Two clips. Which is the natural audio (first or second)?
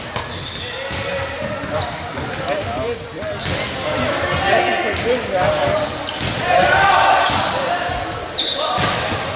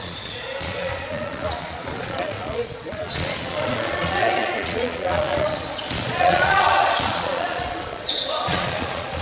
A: first